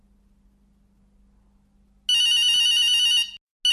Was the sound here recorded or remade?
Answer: recorded